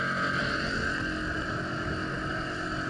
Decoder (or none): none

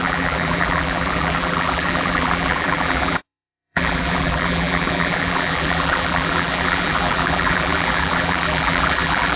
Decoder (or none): vocoder, BigVGAN v2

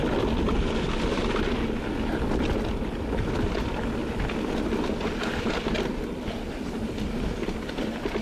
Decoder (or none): none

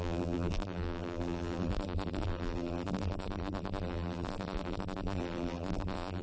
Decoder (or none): vocoder, BigVGAN v2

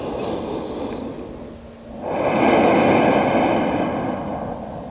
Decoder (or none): none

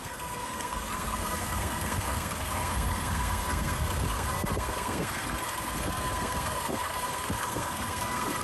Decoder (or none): codec, SNAC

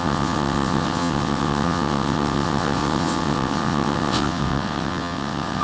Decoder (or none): vocoder, WaveNeXt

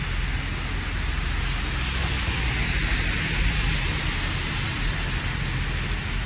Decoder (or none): none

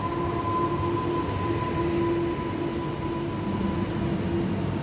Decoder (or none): none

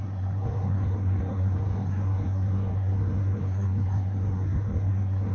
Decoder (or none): codec, SNAC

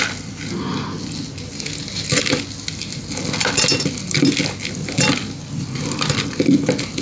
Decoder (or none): none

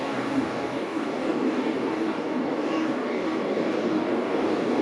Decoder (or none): codec, DAC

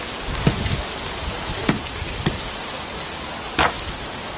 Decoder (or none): none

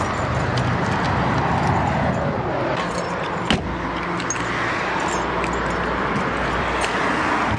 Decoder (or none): none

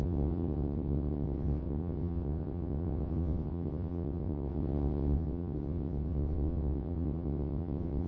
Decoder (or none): vocoder, WaveNeXt